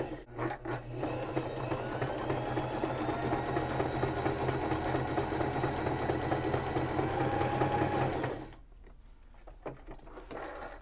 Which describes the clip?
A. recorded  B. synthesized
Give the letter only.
A